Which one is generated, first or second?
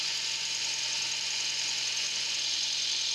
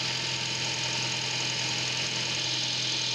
first